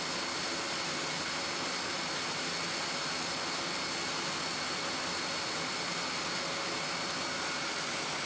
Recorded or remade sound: recorded